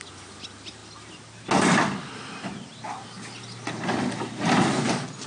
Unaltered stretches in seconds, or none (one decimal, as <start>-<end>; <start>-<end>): 0.0-5.3